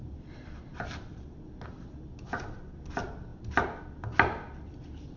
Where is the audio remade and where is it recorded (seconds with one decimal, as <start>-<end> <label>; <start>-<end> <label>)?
0.0-5.2 recorded